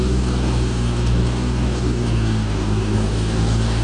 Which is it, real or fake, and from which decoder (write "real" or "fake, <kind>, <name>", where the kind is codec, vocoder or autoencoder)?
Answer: fake, codec, DAC